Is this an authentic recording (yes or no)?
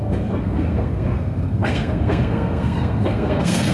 no